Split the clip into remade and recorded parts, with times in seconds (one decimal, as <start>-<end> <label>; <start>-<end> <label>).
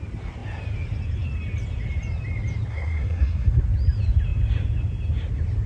0.0-2.7 recorded; 2.7-3.6 remade; 3.6-5.7 recorded